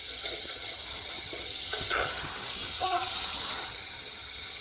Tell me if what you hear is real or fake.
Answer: fake